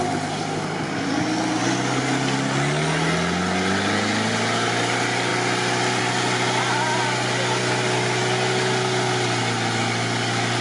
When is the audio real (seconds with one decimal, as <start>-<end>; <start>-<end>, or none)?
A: 0.0-10.6